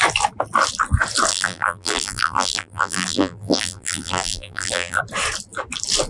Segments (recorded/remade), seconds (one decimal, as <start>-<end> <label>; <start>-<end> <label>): 0.0-1.3 recorded; 1.3-5.0 remade; 5.0-6.1 recorded